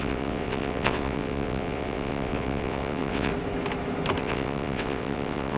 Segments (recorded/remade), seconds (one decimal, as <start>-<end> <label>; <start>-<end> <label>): 0.0-3.3 remade; 3.3-4.2 recorded; 4.2-5.6 remade